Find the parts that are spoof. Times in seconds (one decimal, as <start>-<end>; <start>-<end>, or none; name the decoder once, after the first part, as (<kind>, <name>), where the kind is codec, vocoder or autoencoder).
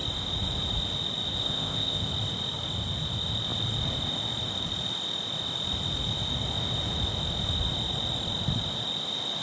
1.4-2.1 (codec, ZipCodec)